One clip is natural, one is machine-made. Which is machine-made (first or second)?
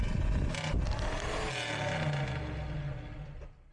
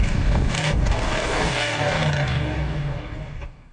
second